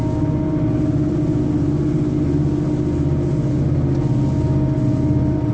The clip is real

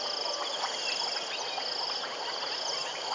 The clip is real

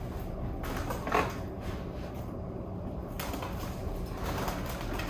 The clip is real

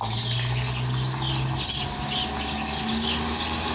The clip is real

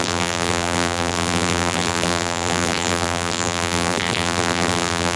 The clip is fake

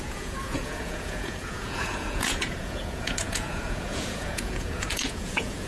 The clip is fake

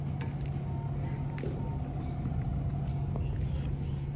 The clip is real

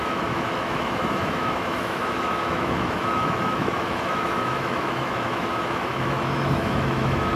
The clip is fake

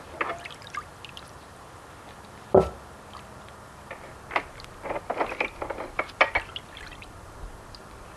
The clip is fake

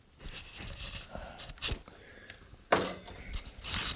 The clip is real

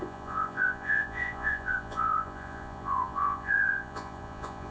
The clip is fake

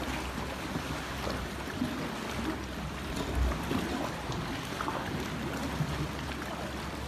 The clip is real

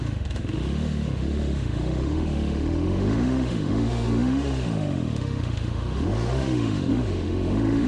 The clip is fake